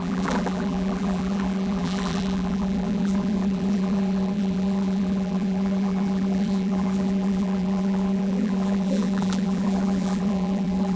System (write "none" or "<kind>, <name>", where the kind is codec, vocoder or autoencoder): vocoder, BigVGAN v2